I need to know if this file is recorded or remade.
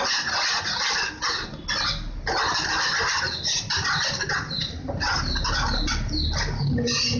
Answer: recorded